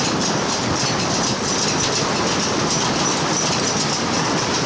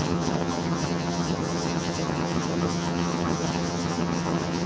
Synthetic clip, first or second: second